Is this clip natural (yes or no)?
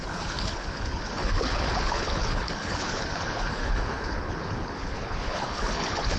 no